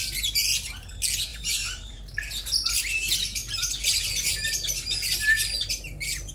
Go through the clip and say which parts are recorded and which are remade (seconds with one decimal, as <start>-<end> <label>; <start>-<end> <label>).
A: 0.0-1.3 recorded; 1.3-2.0 remade; 2.0-6.3 recorded